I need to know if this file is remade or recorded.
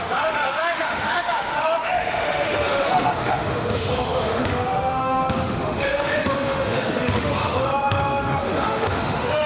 remade